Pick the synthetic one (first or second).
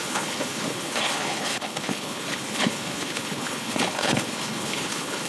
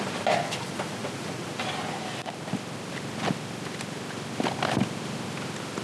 first